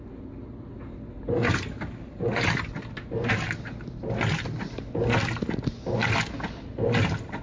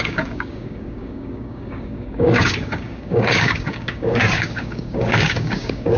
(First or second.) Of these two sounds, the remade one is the second